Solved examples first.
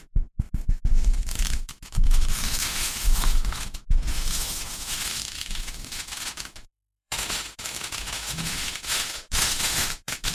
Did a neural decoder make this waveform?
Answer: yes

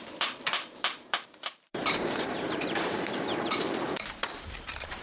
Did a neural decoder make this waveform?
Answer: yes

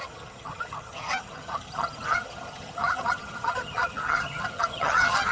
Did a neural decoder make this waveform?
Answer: yes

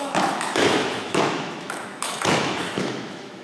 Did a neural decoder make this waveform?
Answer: yes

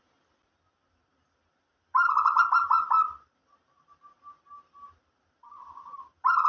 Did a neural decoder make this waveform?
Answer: no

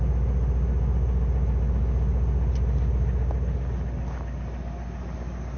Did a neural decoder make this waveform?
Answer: no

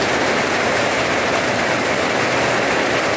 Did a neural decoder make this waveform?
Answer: no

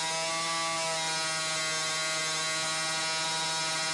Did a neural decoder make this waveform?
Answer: no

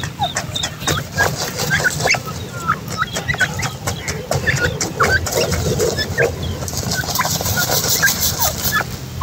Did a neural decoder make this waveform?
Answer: no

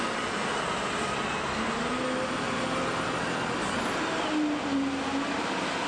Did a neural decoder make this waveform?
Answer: no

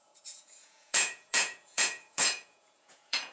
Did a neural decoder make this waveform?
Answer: yes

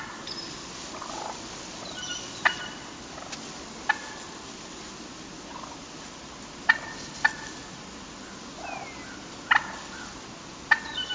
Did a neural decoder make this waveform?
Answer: no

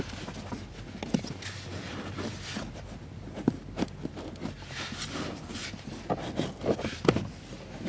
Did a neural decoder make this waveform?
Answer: no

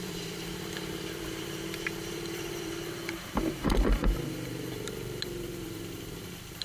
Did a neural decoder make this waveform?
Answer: yes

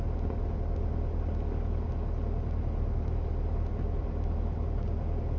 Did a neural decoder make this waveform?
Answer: no